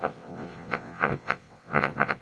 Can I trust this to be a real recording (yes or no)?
no